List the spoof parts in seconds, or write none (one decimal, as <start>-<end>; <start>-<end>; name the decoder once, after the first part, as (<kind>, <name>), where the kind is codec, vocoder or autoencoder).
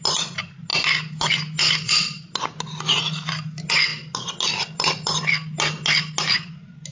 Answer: none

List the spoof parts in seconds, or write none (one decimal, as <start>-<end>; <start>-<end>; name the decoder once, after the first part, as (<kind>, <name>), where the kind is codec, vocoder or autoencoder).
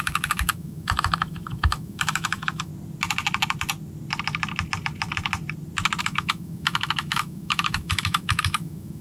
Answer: 0.0-2.7 (autoencoder, DAC-VAE); 6.0-9.0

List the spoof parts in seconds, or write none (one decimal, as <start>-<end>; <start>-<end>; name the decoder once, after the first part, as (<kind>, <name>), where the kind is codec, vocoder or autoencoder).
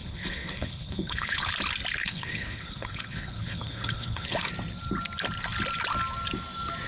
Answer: 0.0-1.5 (codec, HILCodec); 2.0-4.5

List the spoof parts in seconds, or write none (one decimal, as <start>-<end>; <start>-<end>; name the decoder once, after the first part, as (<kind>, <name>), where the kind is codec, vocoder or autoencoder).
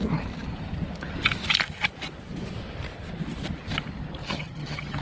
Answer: 4.2-5.0 (vocoder, HiFi-GAN)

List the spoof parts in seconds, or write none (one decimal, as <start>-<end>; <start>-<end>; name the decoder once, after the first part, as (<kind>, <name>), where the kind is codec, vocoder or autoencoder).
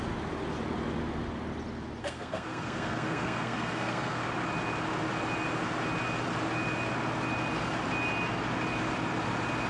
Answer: 2.0-4.2 (codec, SNAC)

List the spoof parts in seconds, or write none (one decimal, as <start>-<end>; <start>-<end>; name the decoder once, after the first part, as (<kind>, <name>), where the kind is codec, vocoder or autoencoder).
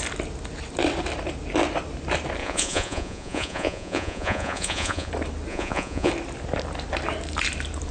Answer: 2.4-5.1 (vocoder, Vocos); 5.5-6.1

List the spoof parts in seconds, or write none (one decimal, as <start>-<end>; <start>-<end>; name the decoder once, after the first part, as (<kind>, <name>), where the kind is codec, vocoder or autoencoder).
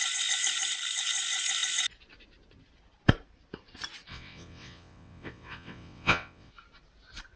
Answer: 4.1-6.5 (vocoder, WaveNeXt)